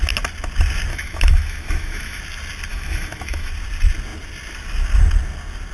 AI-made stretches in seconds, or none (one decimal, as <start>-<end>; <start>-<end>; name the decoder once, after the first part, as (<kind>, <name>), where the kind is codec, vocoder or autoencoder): 0.9-2.2 (autoencoder, DAC-VAE); 2.7-3.5